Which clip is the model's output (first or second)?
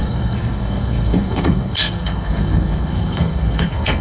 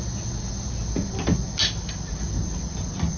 first